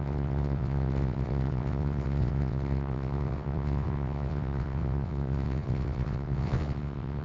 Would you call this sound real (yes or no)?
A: no